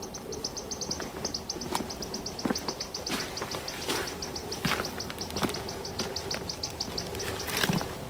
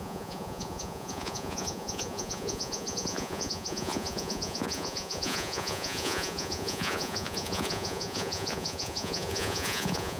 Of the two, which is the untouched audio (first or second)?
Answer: first